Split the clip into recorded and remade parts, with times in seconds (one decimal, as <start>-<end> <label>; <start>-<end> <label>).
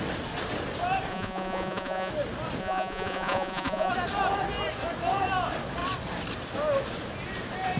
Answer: 0.0-1.1 recorded; 1.1-2.1 remade; 2.1-2.6 recorded; 2.6-3.9 remade; 3.9-7.8 recorded